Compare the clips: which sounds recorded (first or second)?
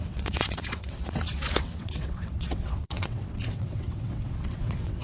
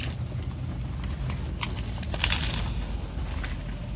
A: second